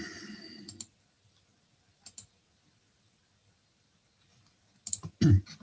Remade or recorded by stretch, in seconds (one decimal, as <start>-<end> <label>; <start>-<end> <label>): 0.0-5.6 recorded